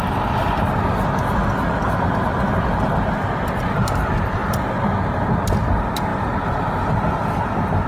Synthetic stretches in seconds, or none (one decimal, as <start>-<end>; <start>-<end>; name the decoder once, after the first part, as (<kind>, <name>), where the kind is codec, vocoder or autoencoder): none